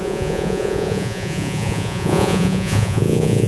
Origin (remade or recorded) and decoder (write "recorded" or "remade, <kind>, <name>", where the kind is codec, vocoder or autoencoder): remade, vocoder, Vocos